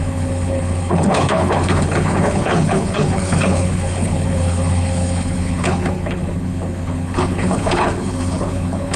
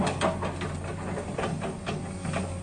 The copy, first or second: first